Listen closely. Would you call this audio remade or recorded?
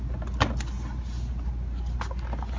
recorded